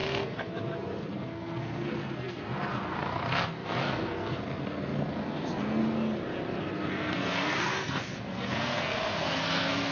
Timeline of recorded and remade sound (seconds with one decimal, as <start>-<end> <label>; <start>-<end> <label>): 0.0-5.8 remade; 5.8-6.6 recorded; 6.6-9.9 remade